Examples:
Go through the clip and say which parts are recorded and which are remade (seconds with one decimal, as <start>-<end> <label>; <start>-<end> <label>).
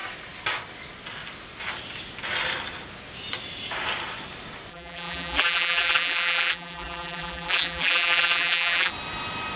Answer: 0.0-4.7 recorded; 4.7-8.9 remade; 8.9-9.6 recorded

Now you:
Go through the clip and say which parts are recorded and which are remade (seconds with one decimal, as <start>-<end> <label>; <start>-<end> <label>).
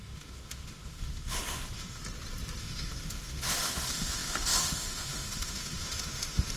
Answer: 0.0-2.0 remade; 2.0-2.6 recorded; 2.6-6.6 remade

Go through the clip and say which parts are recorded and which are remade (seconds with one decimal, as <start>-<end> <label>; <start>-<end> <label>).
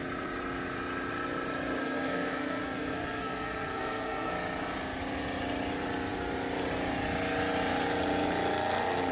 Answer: 0.0-1.8 recorded; 1.8-4.3 remade; 4.3-9.1 recorded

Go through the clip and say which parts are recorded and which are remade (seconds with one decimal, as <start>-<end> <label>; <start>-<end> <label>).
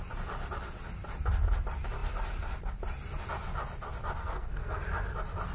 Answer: 0.0-4.2 recorded; 4.2-4.8 remade; 4.8-5.5 recorded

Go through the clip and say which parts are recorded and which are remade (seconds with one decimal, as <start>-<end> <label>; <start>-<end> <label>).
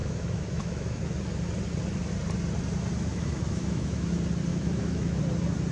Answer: 0.0-1.0 remade; 1.0-3.1 recorded; 3.1-4.1 remade; 4.1-4.5 recorded; 4.5-5.2 remade; 5.2-5.7 recorded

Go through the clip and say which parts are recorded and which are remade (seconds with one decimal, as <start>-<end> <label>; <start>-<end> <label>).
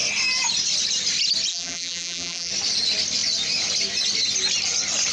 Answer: 0.0-1.5 recorded; 1.5-2.5 remade; 2.5-5.1 recorded